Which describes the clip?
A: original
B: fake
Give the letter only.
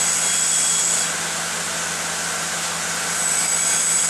A